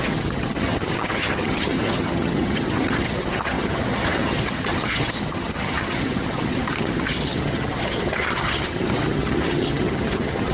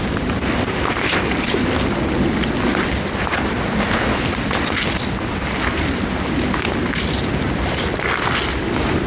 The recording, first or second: second